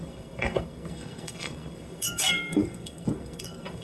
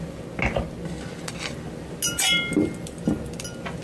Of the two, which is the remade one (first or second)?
first